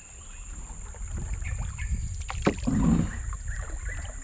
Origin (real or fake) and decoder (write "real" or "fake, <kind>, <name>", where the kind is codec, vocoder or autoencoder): real